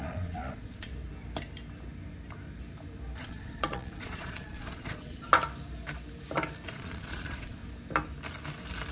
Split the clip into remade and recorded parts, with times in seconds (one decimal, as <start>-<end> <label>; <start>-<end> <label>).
0.0-0.9 remade; 0.9-3.2 recorded; 3.2-5.3 remade; 5.3-6.7 recorded; 6.7-7.6 remade; 7.6-8.9 recorded